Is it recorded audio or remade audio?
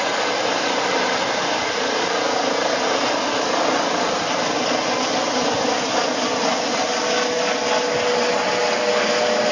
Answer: recorded